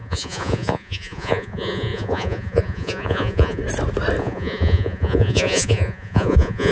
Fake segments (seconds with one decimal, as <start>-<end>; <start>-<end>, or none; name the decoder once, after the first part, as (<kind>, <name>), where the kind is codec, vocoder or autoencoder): 0.0-3.6 (vocoder, Vocos); 4.2-6.7